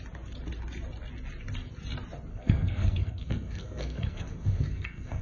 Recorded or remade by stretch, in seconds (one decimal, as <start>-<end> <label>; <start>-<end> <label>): 0.0-2.3 recorded; 2.3-5.2 remade